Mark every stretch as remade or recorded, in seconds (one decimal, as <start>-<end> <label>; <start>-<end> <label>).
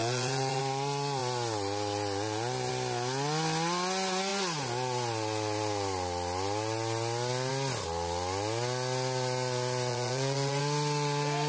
0.0-0.6 remade; 0.6-9.9 recorded; 9.9-10.6 remade; 10.6-11.5 recorded